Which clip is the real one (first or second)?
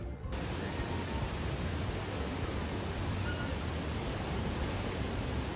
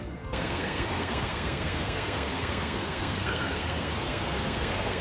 first